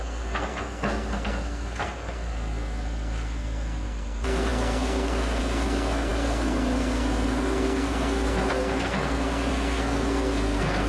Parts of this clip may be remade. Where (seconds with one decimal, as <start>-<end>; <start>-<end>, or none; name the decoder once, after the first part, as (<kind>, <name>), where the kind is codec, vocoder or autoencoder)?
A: 0.0-10.9 (codec, SNAC)